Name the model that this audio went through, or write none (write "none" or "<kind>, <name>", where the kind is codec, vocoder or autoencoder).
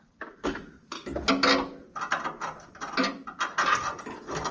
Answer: none